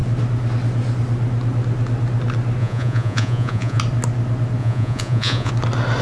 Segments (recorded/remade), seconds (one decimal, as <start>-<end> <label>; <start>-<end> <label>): 0.0-2.6 recorded; 2.6-3.8 remade; 3.8-4.6 recorded; 4.6-5.5 remade; 5.5-6.0 recorded